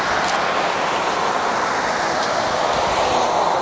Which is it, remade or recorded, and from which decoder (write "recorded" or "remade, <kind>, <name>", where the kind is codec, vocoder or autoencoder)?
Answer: recorded